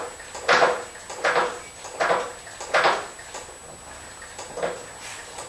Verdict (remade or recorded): recorded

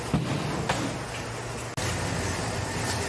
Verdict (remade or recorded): recorded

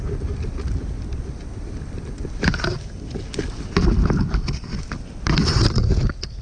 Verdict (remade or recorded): recorded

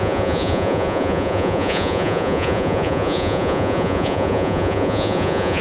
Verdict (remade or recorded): remade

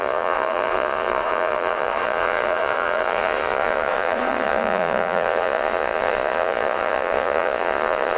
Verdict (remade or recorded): remade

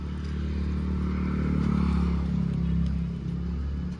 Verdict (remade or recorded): recorded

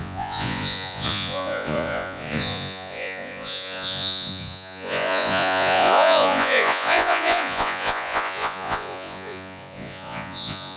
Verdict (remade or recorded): remade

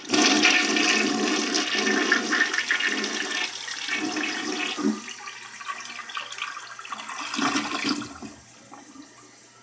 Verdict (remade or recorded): recorded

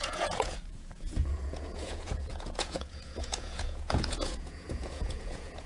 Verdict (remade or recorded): remade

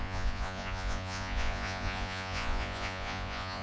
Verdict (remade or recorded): remade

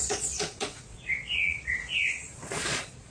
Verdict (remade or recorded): remade